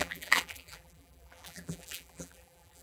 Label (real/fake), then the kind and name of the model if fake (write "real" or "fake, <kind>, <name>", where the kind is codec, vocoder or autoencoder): fake, vocoder, BigVGAN v2